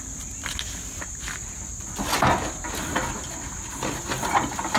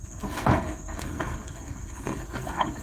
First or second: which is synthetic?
second